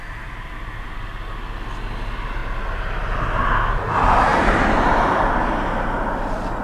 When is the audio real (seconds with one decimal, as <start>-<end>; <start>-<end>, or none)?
0.0-2.4; 3.1-4.3; 5.5-6.6